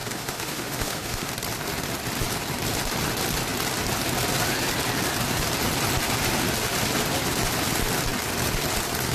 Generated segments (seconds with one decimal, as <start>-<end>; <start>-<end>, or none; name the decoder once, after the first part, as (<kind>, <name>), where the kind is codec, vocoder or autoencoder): 0.0-1.3 (autoencoder, DAC-VAE)